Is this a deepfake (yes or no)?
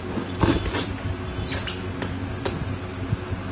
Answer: no